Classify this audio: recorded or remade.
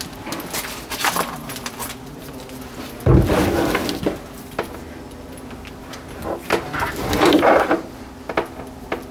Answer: recorded